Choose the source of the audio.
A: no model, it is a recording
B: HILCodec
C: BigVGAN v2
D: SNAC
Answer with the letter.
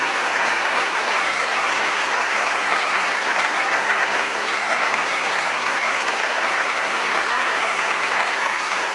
D